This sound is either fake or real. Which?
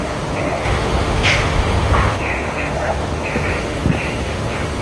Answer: fake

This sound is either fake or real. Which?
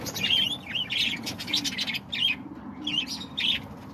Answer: real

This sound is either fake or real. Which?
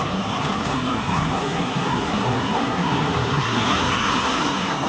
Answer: fake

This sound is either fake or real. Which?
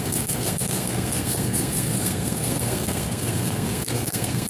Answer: fake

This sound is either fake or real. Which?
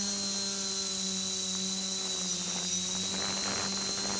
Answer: real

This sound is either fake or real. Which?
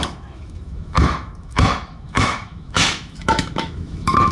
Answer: fake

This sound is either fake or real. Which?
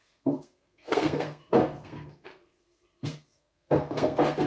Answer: fake